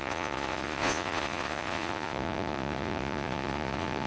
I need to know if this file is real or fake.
fake